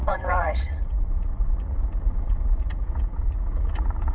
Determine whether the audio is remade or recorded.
remade